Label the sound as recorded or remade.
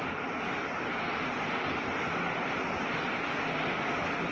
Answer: recorded